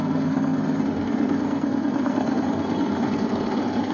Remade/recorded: remade